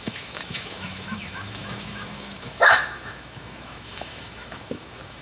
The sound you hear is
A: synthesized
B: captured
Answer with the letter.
A